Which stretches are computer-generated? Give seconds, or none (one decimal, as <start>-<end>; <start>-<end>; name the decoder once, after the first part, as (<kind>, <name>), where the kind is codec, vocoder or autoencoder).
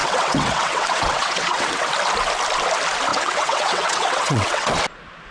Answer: 0.0-1.9 (vocoder, WaveNeXt); 3.1-4.8